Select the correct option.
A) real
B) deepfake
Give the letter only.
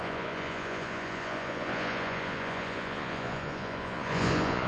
B